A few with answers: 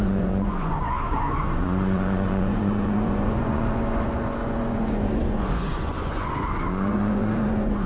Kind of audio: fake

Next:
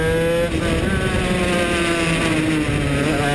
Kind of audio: real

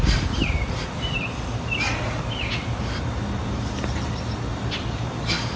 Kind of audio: real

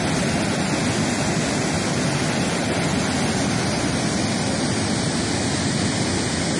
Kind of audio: real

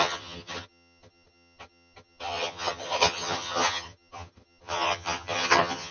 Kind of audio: fake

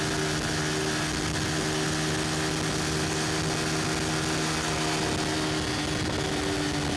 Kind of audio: real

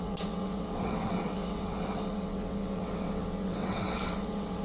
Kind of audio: fake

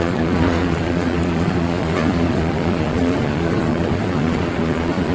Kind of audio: fake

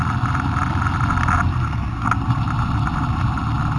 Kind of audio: real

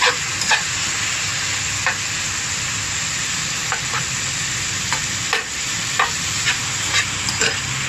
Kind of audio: real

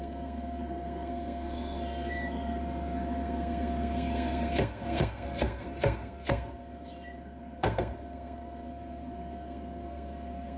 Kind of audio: fake